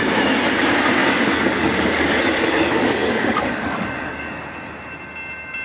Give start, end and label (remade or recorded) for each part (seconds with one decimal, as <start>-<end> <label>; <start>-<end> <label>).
0.0-1.0 recorded; 1.0-4.4 remade; 4.4-5.6 recorded